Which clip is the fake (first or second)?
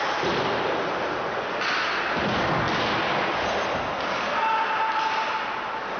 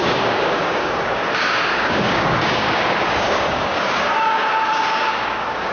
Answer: second